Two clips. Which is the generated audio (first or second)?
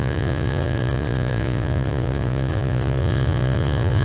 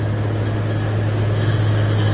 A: first